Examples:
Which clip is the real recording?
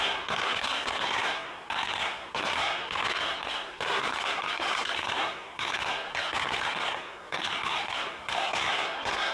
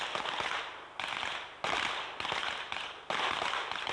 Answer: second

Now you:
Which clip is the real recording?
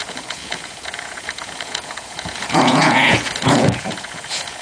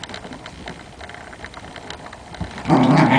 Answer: second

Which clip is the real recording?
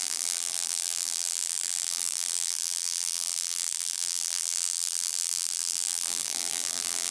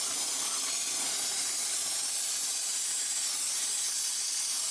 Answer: second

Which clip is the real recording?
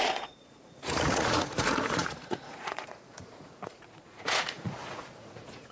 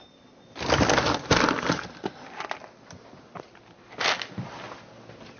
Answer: second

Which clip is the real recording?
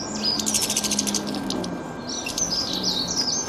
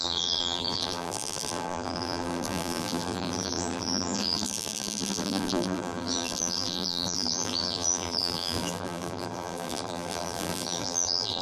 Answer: first